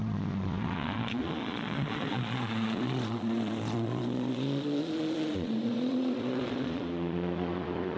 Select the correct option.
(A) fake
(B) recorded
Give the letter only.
A